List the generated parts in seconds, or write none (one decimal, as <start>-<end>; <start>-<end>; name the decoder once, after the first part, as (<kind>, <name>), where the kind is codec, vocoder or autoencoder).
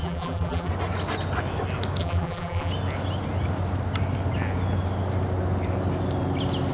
0.0-0.7 (vocoder, BigVGAN v2); 2.0-2.7